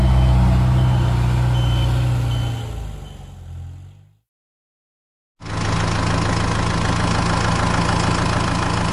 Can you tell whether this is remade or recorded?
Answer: recorded